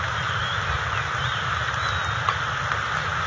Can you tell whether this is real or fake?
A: real